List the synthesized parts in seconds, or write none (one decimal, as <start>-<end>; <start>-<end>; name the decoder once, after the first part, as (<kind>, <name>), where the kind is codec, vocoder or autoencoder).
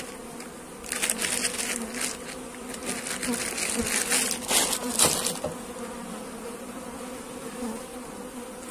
none